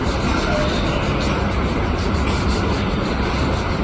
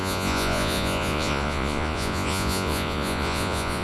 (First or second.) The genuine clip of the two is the first